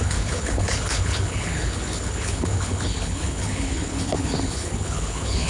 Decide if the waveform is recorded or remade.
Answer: remade